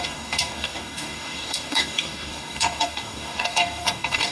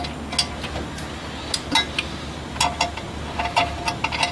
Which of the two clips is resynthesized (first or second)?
first